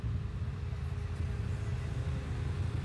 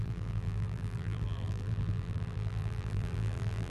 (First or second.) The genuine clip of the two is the first